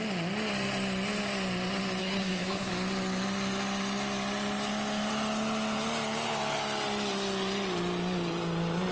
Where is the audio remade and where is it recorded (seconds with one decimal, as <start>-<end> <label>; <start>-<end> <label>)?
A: 0.0-2.0 recorded; 2.0-2.7 remade; 2.7-8.9 recorded